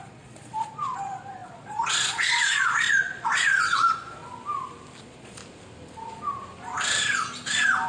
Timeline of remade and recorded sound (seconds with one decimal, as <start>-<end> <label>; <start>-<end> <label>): 0.0-4.2 remade; 4.2-5.0 recorded; 5.0-5.4 remade; 5.4-7.9 recorded